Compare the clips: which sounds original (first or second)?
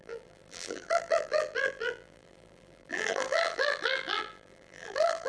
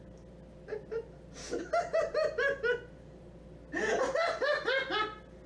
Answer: second